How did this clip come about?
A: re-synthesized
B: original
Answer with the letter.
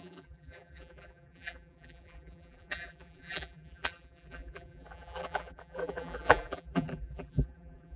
A